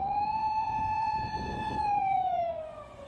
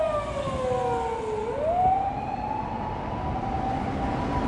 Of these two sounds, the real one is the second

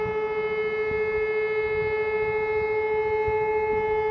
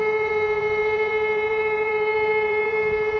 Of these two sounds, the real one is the first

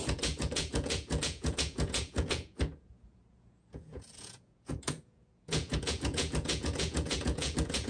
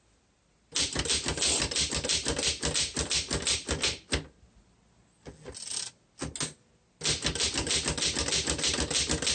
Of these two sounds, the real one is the second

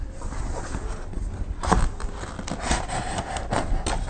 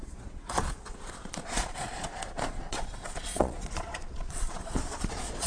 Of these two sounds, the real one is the first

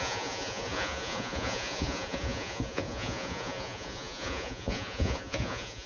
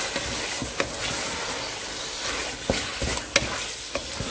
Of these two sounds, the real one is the second